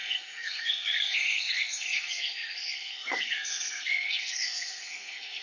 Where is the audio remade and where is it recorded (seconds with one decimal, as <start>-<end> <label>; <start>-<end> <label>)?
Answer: 0.0-5.4 remade